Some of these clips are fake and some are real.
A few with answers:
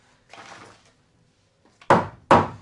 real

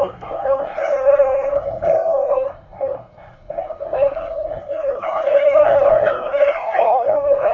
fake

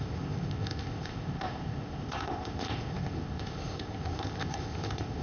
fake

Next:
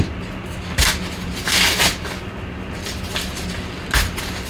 real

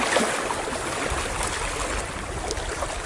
real